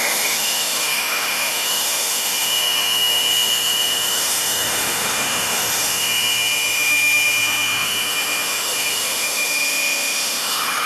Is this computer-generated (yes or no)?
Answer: yes